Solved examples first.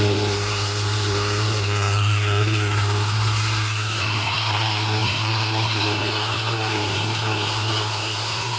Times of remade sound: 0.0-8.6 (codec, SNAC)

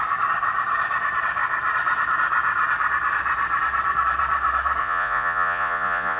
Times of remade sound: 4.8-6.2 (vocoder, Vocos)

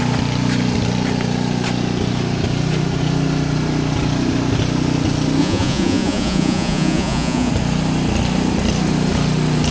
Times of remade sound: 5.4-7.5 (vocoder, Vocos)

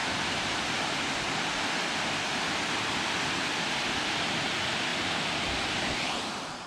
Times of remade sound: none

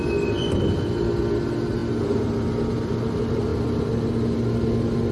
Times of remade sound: none

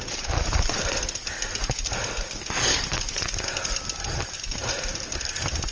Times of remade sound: none

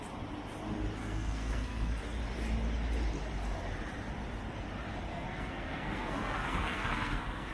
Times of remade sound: 1.0-2.0 (codec, SNAC); 5.1-7.5